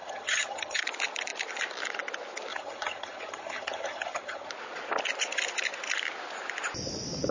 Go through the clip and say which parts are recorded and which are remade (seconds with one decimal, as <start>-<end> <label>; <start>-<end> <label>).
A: 0.0-0.8 remade; 0.8-2.5 recorded; 2.5-4.5 remade; 4.5-7.3 recorded